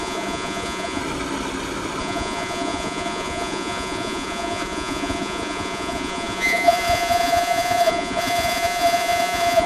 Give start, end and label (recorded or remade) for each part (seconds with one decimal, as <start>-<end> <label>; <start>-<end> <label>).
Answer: 0.0-1.0 remade; 1.0-2.0 recorded; 2.0-9.7 remade